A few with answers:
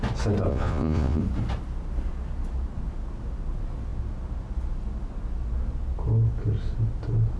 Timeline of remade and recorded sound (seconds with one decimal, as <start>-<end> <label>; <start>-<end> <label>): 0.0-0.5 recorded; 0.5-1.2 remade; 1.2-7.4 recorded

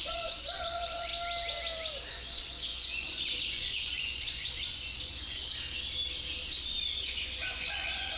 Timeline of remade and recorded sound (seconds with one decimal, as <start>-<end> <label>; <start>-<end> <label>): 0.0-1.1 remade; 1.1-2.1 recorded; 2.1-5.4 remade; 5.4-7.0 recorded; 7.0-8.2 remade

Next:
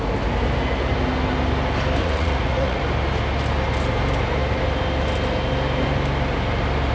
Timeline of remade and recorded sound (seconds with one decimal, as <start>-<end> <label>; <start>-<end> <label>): 0.0-2.0 recorded; 2.0-2.8 remade; 2.8-6.9 recorded

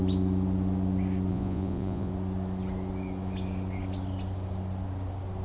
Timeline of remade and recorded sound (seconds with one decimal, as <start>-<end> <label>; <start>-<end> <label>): 0.0-1.3 recorded; 1.3-2.1 remade; 2.1-5.4 recorded

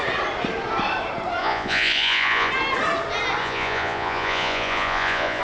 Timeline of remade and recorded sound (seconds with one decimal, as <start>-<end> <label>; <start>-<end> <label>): 0.0-1.4 recorded; 1.4-2.5 remade; 2.5-3.4 recorded; 3.4-5.4 remade

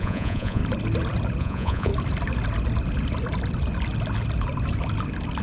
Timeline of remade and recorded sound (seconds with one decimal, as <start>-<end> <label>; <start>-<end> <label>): 0.0-0.6 remade; 0.6-1.4 recorded; 1.4-1.9 remade; 1.9-5.4 recorded

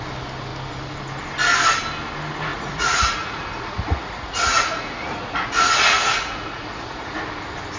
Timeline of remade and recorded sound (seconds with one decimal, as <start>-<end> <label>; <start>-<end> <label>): 0.0-2.5 recorded; 2.5-7.2 remade; 7.2-7.8 recorded